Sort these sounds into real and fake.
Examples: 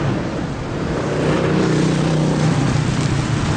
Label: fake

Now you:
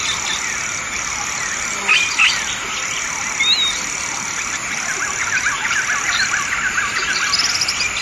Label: real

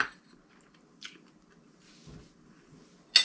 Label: real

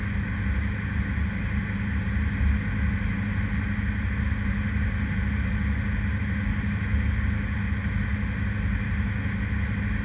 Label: real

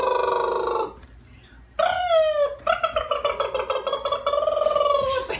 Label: real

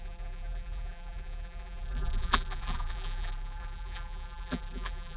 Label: fake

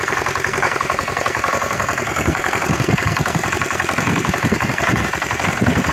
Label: fake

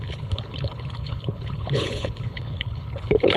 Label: fake